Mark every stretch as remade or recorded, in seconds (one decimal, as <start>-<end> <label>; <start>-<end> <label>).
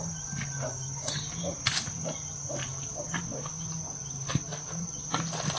0.0-5.6 recorded